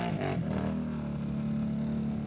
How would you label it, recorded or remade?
recorded